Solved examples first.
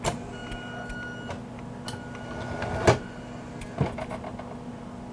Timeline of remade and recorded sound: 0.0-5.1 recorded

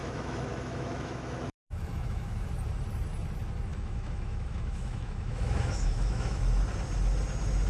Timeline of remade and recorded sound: 0.0-2.5 remade; 2.5-3.7 recorded; 3.7-6.4 remade; 6.4-7.7 recorded

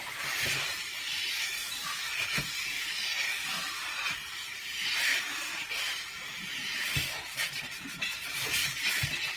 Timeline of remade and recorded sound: 0.0-1.6 remade; 1.6-3.4 recorded; 3.4-9.4 remade

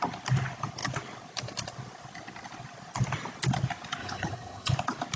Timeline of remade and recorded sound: 0.0-4.0 recorded; 4.0-4.7 remade; 4.7-5.2 recorded

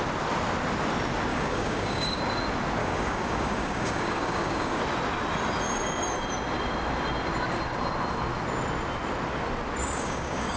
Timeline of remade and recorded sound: 0.0-1.3 recorded; 1.3-2.2 remade; 2.2-2.8 recorded; 2.8-4.8 remade; 4.8-9.8 recorded; 9.8-10.6 remade